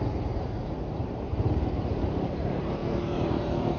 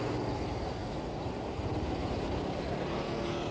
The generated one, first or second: first